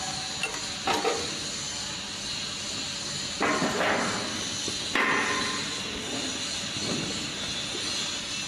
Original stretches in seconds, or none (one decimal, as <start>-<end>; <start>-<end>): 0.0-8.5